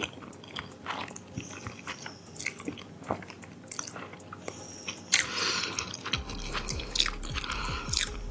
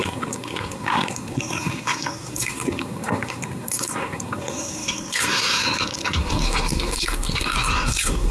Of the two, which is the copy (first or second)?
second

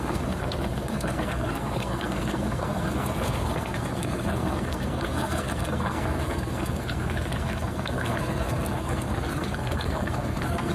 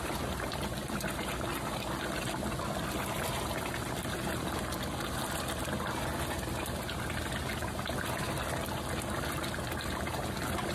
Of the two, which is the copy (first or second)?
first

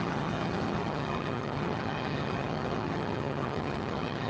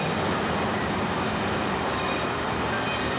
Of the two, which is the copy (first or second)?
first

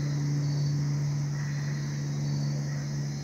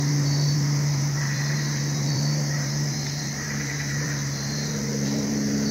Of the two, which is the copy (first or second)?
second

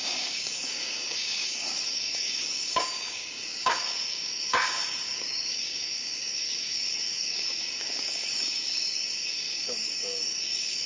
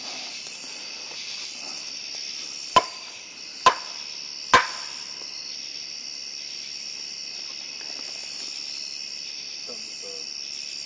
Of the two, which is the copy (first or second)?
first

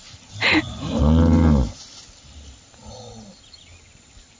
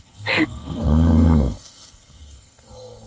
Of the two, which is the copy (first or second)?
second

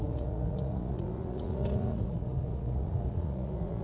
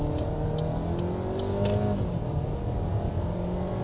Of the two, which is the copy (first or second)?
first